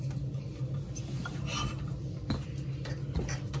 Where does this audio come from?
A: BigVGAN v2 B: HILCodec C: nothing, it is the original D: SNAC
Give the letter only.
C